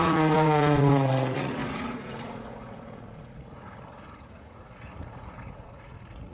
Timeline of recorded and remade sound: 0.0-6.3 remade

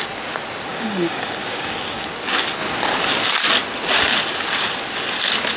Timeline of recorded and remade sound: 0.0-0.7 recorded; 0.7-2.1 remade; 2.1-5.6 recorded

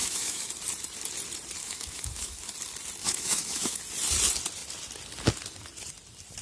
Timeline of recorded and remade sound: 0.0-0.5 remade; 0.5-1.6 recorded; 1.6-2.5 remade; 2.5-3.0 recorded; 3.0-3.8 remade; 3.8-6.4 recorded

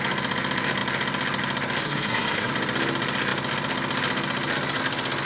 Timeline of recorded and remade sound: 0.0-1.8 recorded; 1.8-2.5 remade; 2.5-5.3 recorded

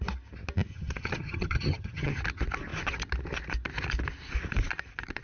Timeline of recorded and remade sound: 0.0-0.7 recorded; 0.7-2.2 remade; 2.2-5.2 recorded